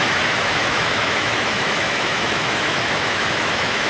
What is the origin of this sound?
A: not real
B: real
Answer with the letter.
A